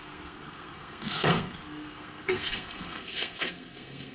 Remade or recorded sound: remade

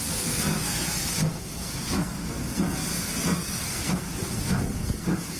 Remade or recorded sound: remade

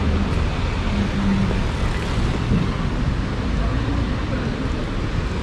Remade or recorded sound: recorded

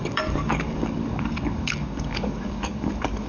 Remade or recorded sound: remade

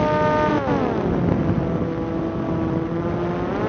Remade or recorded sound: recorded